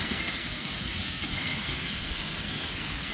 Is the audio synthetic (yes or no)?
yes